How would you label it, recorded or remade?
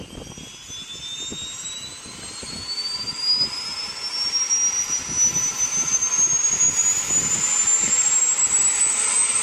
recorded